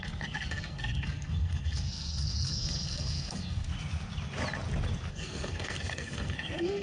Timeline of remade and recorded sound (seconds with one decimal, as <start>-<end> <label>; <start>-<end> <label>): 0.0-3.7 remade; 3.7-5.1 recorded; 5.1-6.8 remade